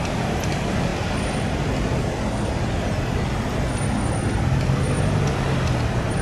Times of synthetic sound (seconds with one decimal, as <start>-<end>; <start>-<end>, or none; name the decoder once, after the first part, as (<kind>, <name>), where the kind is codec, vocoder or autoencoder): none